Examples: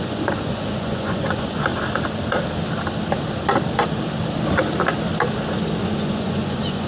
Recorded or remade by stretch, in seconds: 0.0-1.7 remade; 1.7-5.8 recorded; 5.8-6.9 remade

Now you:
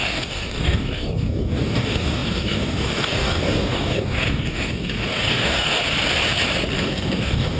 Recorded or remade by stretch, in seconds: 0.0-5.8 remade; 5.8-6.8 recorded; 6.8-7.6 remade

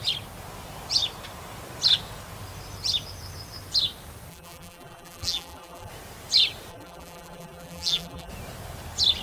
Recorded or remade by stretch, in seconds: 0.0-4.3 recorded; 4.3-5.9 remade; 5.9-6.7 recorded; 6.7-8.3 remade; 8.3-9.2 recorded

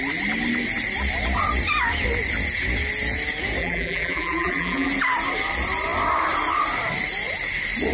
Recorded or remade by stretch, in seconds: 0.0-3.6 recorded; 3.6-4.9 remade; 4.9-7.9 recorded

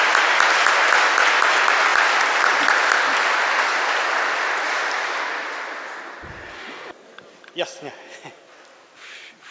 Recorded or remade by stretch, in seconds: 0.0-1.9 recorded; 1.9-6.7 remade; 6.7-9.5 recorded

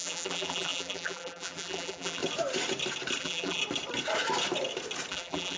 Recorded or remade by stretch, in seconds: 0.0-2.2 remade; 2.2-3.2 recorded; 3.2-3.6 remade; 3.6-5.1 recorded; 5.1-5.6 remade